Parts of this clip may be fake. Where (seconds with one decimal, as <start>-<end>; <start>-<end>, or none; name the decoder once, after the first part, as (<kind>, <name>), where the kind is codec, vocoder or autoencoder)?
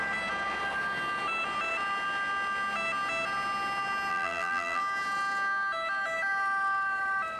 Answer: 4.1-4.8 (vocoder, BigVGAN v2)